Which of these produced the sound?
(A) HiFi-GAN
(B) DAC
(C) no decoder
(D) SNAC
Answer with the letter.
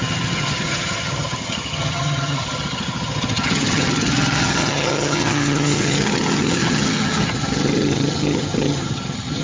A